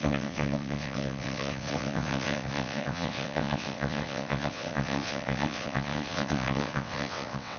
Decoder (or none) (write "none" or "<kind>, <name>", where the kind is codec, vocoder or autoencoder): vocoder, WaveNeXt